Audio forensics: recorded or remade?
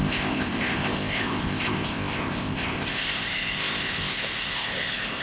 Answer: remade